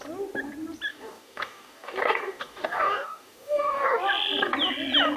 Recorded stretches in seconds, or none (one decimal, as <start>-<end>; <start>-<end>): 0.0-0.9; 4.0-5.2